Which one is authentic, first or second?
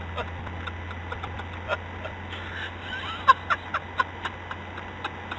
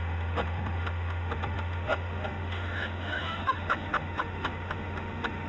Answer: first